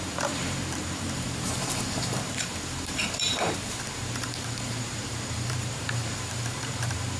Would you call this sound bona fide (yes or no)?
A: no